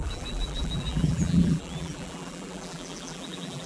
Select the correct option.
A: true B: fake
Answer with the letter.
B